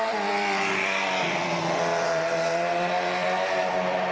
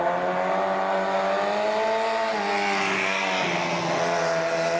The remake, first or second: first